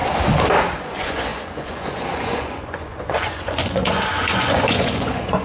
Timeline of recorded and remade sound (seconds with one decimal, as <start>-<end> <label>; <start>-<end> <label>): 0.0-0.8 recorded; 0.8-5.4 remade